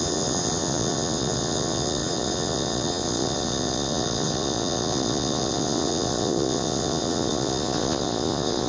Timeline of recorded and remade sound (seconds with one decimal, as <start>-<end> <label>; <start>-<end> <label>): 0.0-8.7 remade